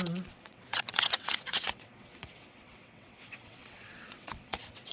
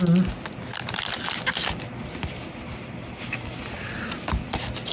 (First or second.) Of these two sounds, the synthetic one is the first